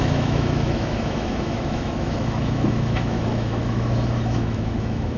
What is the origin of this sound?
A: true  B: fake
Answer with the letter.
B